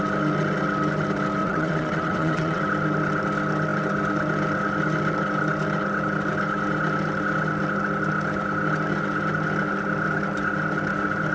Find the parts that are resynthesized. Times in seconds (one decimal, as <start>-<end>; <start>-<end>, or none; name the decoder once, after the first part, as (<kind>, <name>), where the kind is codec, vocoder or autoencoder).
1.4-2.6 (vocoder, WaveNeXt)